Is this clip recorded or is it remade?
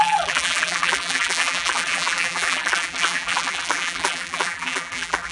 remade